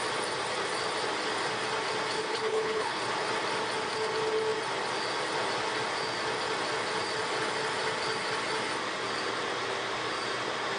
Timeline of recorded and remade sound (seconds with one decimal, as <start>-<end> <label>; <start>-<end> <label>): 0.0-2.2 recorded; 2.2-3.0 remade; 3.0-10.8 recorded